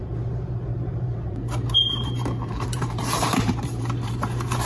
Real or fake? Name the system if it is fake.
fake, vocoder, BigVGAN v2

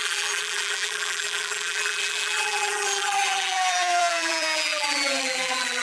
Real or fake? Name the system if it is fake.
fake, vocoder, BigVGAN v2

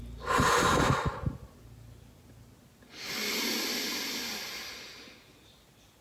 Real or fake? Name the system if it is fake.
real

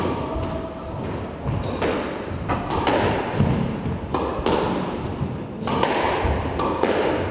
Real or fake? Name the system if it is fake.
real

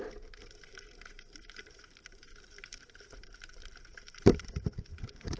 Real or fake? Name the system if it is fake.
fake, vocoder, BigVGAN v2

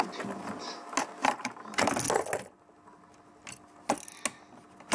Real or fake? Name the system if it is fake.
real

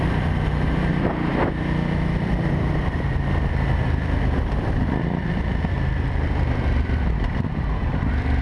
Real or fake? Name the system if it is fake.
fake, vocoder, BigVGAN v2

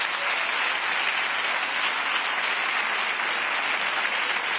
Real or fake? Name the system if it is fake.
real